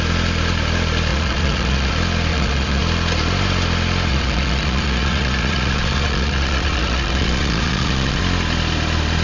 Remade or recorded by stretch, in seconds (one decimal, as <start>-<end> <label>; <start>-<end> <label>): 0.0-1.1 recorded; 1.1-1.9 remade; 1.9-2.3 recorded; 2.3-2.8 remade; 2.8-4.1 recorded; 4.1-8.2 remade; 8.2-9.2 recorded